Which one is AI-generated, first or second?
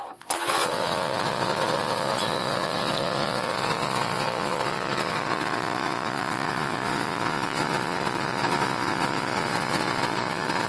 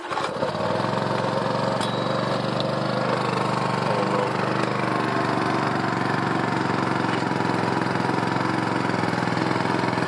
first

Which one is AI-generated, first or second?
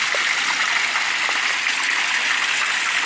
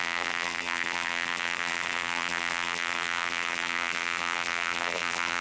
second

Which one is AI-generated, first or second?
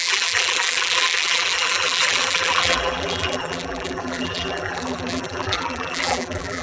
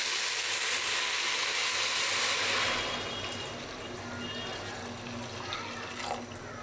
first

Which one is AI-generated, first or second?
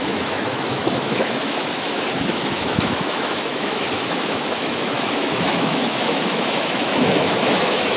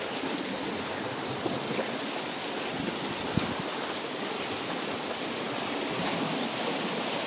first